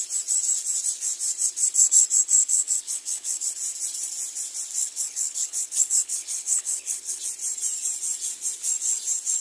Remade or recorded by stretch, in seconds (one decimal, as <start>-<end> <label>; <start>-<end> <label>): 0.0-2.4 recorded; 2.4-3.5 remade; 3.5-4.8 recorded; 4.8-7.2 remade; 7.2-9.4 recorded